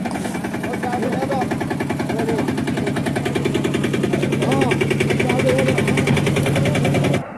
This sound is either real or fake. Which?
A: real